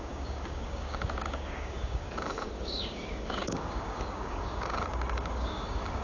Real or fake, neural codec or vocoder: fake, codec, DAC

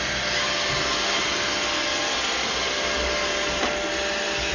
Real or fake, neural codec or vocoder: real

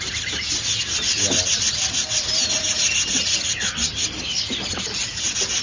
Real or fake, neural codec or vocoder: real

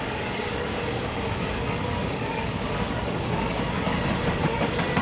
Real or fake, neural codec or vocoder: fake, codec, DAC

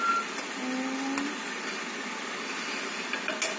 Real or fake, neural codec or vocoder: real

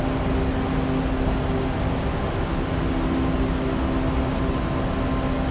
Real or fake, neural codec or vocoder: real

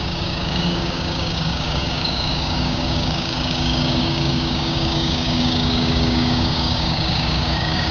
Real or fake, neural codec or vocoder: fake, codec, DAC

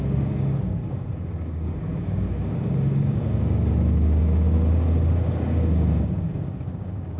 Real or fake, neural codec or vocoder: fake, codec, DAC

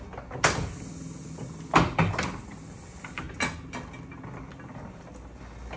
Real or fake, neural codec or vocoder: real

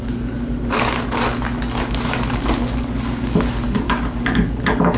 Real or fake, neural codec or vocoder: fake, codec, DAC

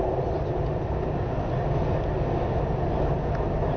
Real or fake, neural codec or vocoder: real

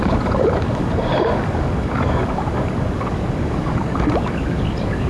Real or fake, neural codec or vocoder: fake, codec, DAC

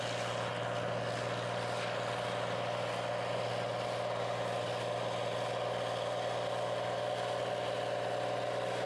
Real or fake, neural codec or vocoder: real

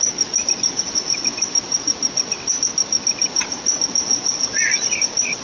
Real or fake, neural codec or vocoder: real